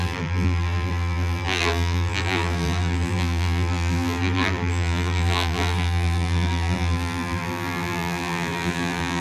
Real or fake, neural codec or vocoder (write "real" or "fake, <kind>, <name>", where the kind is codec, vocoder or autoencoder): fake, vocoder, BigVGAN v2